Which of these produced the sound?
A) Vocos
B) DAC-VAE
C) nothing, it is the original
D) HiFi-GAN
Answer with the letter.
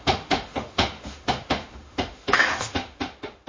B